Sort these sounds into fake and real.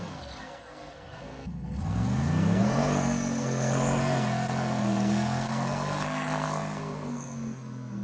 fake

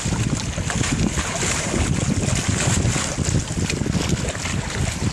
real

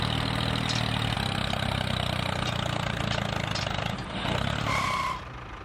real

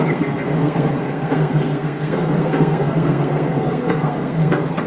fake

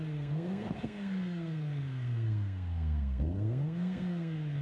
fake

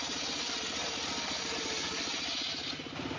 real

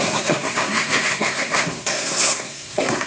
fake